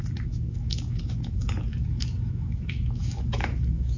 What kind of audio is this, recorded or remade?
remade